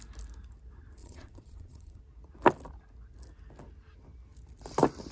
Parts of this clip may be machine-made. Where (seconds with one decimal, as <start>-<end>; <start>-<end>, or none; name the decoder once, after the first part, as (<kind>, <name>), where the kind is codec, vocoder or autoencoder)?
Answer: 1.0-2.0 (vocoder, Vocos)